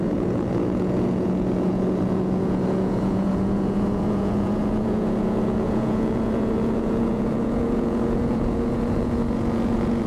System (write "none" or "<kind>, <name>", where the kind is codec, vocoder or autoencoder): vocoder, Vocos